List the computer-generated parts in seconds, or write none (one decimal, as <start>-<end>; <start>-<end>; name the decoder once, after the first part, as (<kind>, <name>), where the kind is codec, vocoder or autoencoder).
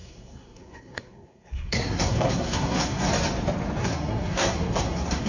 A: 0.0-3.1 (codec, SNAC); 3.8-5.3